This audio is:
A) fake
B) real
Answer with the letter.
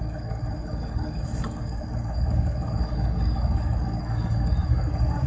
A